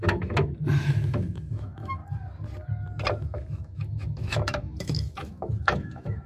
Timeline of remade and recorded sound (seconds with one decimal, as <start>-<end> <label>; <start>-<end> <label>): 0.0-2.0 remade; 2.0-3.2 recorded; 3.2-6.3 remade